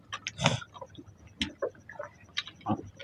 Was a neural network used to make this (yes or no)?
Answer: no